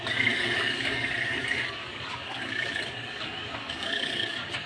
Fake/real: fake